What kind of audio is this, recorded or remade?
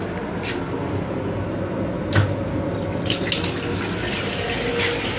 recorded